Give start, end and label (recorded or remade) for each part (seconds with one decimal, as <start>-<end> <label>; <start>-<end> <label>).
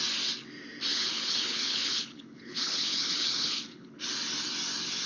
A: 0.0-0.9 recorded; 0.9-4.0 remade; 4.0-5.1 recorded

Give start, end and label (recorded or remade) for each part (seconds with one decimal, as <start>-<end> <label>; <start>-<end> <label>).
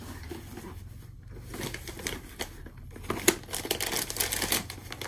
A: 0.0-5.1 recorded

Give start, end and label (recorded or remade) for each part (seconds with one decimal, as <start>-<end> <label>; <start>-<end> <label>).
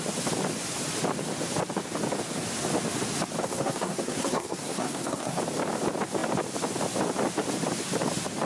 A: 0.0-3.4 recorded; 3.4-5.4 remade; 5.4-8.5 recorded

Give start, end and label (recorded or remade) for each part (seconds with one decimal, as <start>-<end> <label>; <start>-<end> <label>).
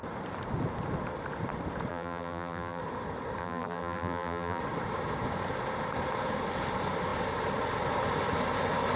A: 0.0-1.9 recorded; 1.9-2.8 remade; 2.8-3.4 recorded; 3.4-4.6 remade; 4.6-9.0 recorded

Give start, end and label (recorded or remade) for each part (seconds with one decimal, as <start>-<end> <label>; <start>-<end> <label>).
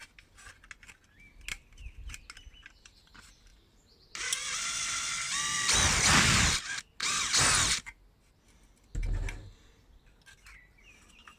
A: 0.0-11.4 recorded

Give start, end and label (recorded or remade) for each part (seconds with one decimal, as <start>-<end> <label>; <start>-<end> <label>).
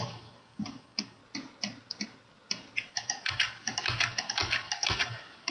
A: 0.0-1.2 remade; 1.2-2.9 recorded; 2.9-5.5 remade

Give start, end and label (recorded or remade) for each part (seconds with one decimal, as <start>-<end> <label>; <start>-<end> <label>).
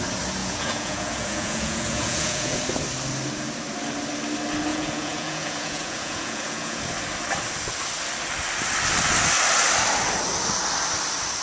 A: 0.0-0.4 recorded; 0.4-2.6 remade; 2.6-4.7 recorded; 4.7-6.8 remade; 6.8-11.4 recorded